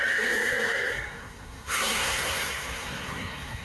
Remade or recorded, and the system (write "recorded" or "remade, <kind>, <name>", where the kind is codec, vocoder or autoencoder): remade, codec, SNAC